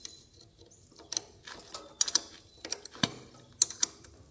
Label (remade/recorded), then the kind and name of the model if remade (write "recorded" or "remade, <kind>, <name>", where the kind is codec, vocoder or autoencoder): recorded